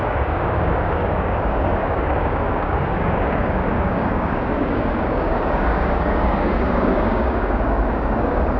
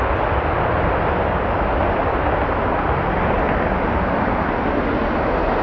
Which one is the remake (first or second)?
first